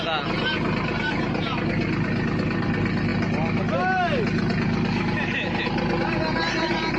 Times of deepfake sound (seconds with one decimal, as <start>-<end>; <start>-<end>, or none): none